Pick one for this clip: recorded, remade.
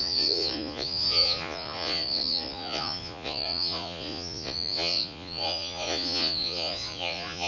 remade